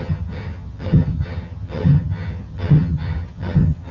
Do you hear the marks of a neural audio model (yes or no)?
yes